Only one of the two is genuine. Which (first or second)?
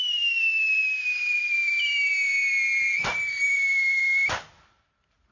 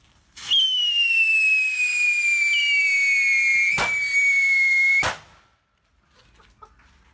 second